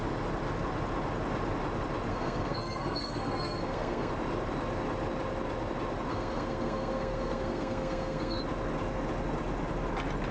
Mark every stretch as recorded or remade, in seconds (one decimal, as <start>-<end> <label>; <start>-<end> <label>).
0.0-2.1 recorded; 2.1-4.1 remade; 4.1-6.1 recorded; 6.1-8.4 remade; 8.4-10.3 recorded

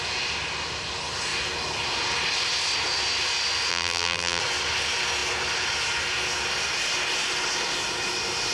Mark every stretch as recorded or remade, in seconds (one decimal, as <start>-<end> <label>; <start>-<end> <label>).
0.0-3.7 recorded; 3.7-4.4 remade; 4.4-8.5 recorded